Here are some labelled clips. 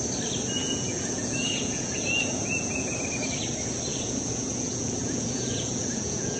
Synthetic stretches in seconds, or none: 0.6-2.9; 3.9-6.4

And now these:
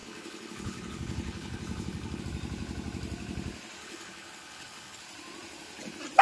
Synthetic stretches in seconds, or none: 0.0-2.2; 3.8-5.0

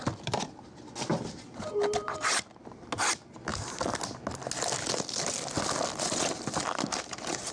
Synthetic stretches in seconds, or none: none

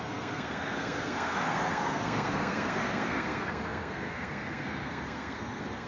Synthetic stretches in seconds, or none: 0.0-5.9

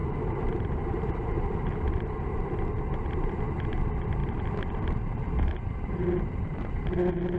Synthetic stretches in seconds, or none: 0.0-1.4